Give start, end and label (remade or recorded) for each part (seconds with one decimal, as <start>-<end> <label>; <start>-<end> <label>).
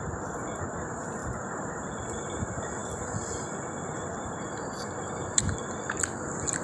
0.0-6.6 recorded